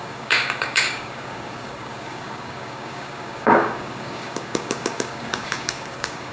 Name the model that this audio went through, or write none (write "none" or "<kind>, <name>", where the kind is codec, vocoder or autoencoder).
codec, DAC